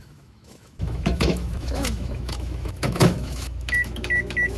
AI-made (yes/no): yes